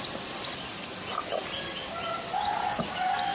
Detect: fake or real real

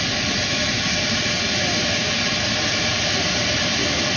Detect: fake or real real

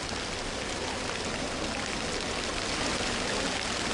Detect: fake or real real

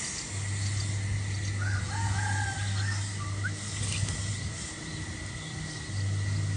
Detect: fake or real real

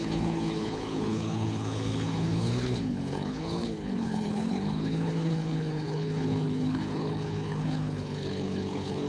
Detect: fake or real fake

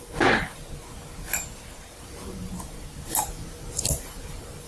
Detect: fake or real real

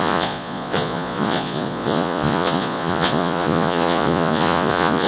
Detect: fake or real fake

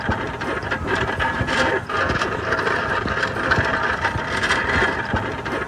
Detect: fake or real real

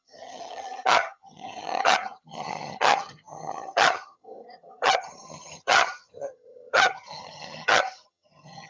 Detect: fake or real fake